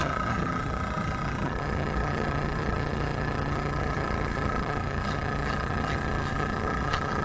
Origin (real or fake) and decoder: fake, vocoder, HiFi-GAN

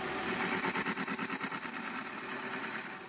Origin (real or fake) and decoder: real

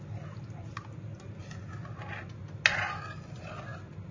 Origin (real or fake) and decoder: real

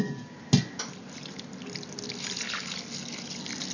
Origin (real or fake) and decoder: real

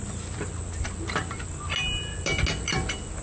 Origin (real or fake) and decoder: real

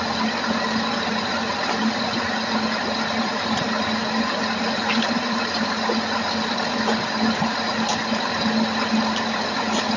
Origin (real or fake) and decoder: real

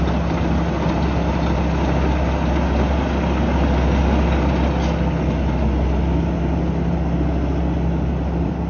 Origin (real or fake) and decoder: real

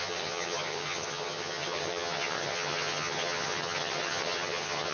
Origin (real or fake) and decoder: fake, vocoder, HiFi-GAN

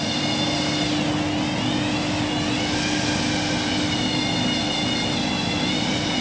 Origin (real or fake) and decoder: real